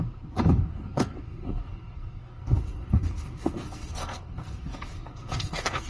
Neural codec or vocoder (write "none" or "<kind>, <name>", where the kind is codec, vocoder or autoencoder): codec, SNAC